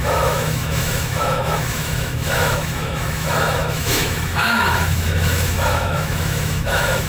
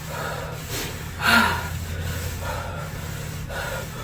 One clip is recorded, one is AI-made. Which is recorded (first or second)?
second